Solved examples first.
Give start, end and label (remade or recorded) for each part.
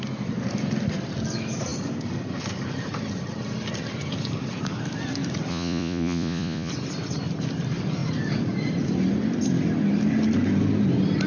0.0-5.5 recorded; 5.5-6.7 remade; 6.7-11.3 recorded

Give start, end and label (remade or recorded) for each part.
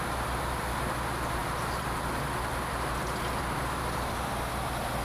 0.0-5.0 recorded